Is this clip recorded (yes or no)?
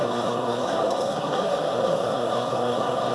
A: no